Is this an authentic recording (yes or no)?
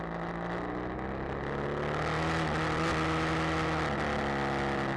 yes